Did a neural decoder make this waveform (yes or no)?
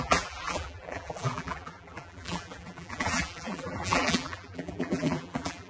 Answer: yes